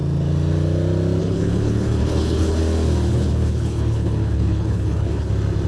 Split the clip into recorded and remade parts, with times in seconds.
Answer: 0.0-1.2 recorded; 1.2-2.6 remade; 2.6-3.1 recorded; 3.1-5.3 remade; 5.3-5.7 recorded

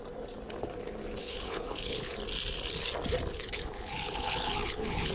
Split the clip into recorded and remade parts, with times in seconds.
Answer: 0.0-1.2 recorded; 1.2-2.1 remade; 2.1-3.3 recorded; 3.3-5.1 remade

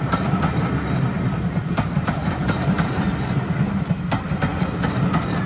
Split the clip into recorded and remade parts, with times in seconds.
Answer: 0.0-2.2 recorded; 2.2-3.2 remade; 3.2-5.5 recorded

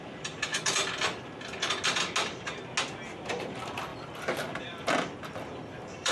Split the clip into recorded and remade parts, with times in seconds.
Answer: 0.0-0.5 remade; 0.5-3.1 recorded; 3.1-3.9 remade; 3.9-4.6 recorded; 4.6-6.1 remade

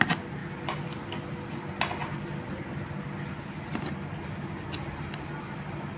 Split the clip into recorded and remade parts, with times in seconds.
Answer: 0.0-6.0 recorded